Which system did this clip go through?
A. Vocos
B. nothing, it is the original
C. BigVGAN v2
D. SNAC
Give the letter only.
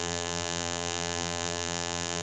C